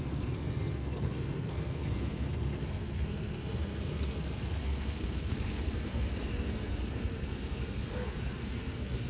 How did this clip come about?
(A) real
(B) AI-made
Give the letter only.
B